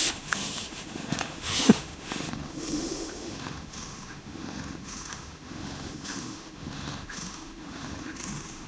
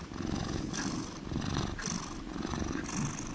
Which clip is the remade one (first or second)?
first